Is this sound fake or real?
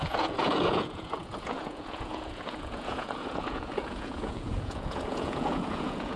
fake